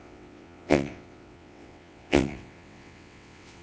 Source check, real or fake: fake